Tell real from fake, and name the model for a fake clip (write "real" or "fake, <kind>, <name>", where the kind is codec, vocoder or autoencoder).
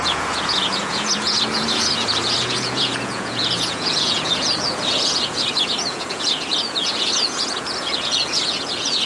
fake, vocoder, Vocos